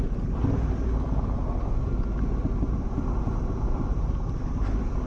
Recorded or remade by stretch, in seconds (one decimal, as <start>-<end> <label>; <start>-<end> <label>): 0.0-2.4 recorded; 2.4-4.4 remade; 4.4-5.1 recorded